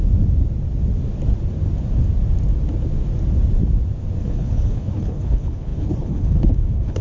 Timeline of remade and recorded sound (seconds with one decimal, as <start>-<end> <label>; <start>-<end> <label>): 0.0-4.2 recorded; 4.2-7.0 remade